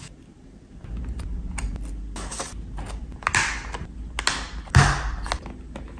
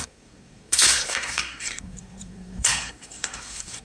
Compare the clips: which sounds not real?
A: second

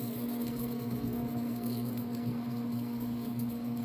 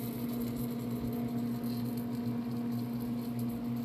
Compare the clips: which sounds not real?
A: first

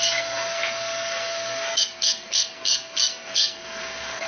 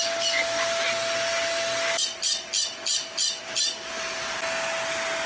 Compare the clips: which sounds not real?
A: first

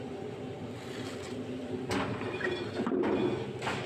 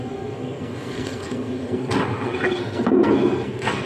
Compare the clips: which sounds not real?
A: second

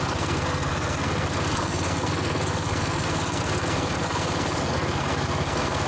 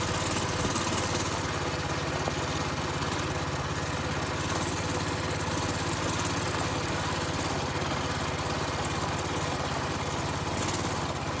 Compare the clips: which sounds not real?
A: first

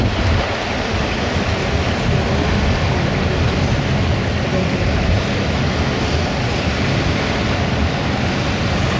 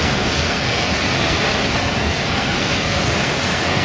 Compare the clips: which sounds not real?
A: second